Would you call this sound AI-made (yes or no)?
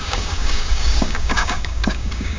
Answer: yes